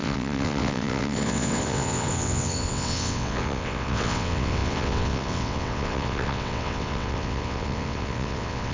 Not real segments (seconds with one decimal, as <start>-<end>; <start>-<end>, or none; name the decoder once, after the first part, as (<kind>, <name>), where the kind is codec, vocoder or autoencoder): 0.0-8.7 (vocoder, WaveNeXt)